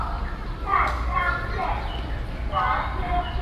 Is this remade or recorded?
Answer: recorded